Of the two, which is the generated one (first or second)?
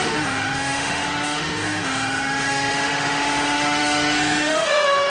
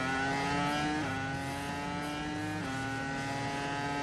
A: first